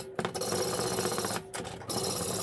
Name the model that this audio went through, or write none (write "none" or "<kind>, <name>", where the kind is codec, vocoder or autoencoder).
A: none